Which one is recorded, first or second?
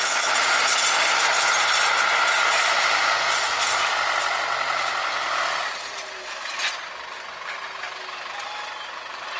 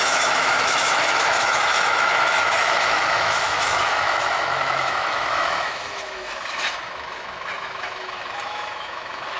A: first